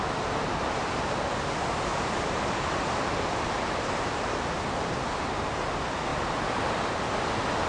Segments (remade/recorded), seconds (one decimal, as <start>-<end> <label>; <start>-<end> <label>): 0.0-1.9 recorded; 1.9-5.3 remade; 5.3-7.7 recorded